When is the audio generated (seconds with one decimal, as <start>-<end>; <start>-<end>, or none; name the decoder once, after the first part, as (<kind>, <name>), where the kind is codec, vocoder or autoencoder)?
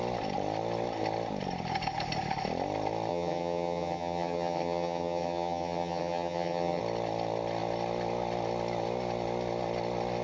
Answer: 3.1-6.8 (vocoder, HiFi-GAN)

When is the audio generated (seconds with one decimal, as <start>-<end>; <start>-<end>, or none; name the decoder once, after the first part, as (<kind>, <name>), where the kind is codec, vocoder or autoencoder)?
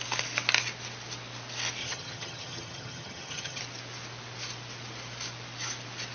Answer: 1.8-3.6 (vocoder, HiFi-GAN)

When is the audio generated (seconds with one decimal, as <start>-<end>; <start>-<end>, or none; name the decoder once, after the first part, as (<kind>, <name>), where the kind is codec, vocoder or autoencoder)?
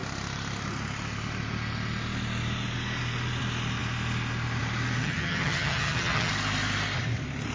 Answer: 5.0-6.3 (vocoder, HiFi-GAN)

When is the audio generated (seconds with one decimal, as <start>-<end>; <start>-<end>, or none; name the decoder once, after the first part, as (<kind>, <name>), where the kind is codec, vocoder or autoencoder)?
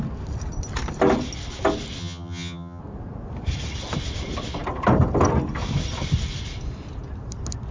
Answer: 2.0-2.8 (vocoder, HiFi-GAN)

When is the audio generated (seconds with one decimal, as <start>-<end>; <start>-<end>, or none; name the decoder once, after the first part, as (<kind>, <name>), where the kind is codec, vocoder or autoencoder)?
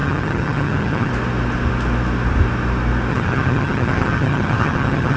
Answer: 0.0-1.1 (vocoder, HiFi-GAN); 3.1-5.2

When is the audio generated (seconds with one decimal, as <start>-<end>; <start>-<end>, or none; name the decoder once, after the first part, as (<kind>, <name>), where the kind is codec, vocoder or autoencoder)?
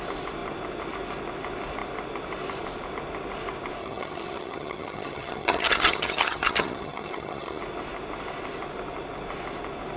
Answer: 3.8-7.6 (vocoder, HiFi-GAN)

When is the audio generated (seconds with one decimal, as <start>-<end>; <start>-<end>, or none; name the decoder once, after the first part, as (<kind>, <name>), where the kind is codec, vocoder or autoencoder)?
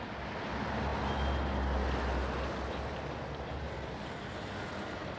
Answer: none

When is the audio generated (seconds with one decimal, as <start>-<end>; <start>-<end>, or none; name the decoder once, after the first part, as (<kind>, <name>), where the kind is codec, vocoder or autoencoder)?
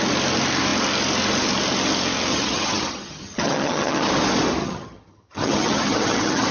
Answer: 2.3-4.1 (vocoder, HiFi-GAN); 4.6-6.5